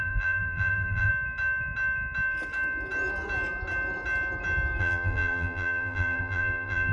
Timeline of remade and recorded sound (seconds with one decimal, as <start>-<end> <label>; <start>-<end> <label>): 0.0-1.1 remade; 1.1-4.8 recorded; 4.8-6.9 remade